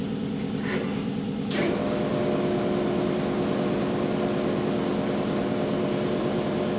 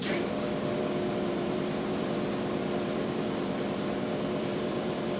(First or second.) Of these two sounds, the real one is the first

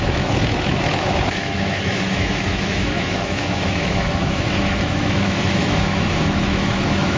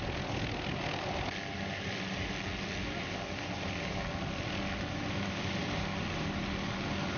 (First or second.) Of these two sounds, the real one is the second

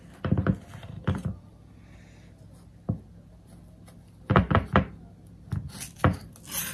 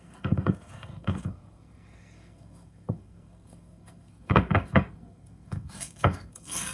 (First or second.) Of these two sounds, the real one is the first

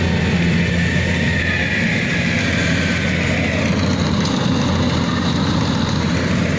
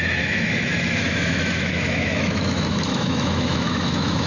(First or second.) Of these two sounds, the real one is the first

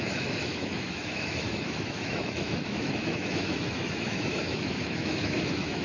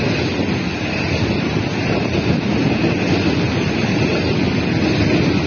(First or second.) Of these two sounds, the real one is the second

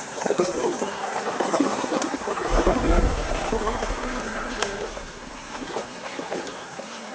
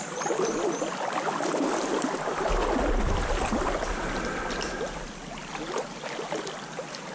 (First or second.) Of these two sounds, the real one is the second